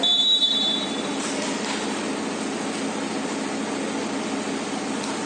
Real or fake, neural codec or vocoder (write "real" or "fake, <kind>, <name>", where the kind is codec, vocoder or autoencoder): real